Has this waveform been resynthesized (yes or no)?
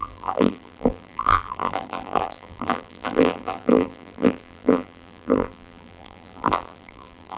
yes